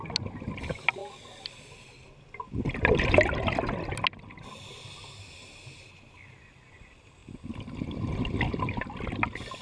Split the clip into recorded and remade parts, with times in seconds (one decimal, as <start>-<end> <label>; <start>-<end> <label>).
0.0-9.6 recorded